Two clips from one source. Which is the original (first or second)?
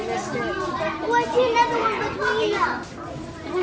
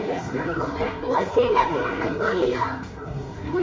first